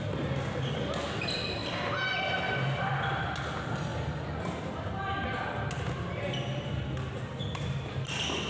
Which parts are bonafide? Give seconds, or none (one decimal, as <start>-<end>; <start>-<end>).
0.0-8.5